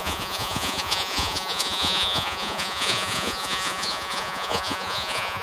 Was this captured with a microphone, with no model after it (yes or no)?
no